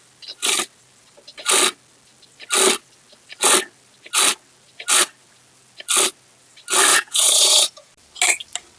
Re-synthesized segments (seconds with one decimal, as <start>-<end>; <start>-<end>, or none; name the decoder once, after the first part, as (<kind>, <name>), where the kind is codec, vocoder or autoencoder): 6.9-7.9 (vocoder, Vocos)